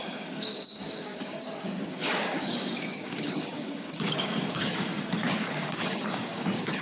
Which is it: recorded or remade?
remade